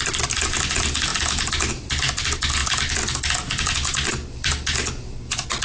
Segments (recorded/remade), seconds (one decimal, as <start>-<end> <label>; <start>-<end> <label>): 0.0-5.6 recorded